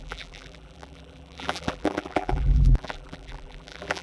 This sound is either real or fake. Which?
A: fake